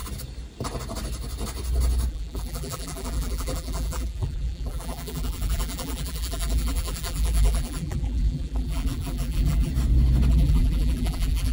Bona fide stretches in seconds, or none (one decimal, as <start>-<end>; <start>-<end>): 0.0-2.1; 9.7-10.3